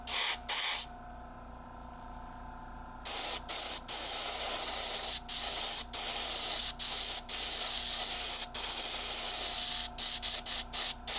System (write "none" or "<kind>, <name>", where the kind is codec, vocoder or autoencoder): none